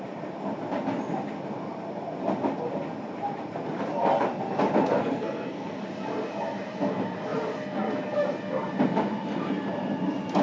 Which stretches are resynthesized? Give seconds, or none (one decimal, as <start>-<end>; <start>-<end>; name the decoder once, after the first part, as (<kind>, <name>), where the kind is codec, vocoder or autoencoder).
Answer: 5.0-5.8 (codec, SNAC)